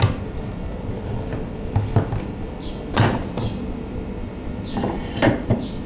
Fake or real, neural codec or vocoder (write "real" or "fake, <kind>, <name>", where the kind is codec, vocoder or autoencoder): real